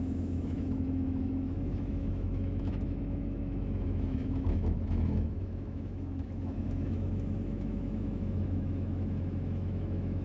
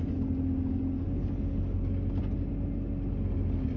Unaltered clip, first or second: second